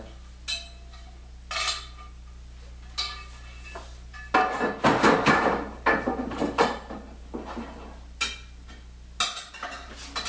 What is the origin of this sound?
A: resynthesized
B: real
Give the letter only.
B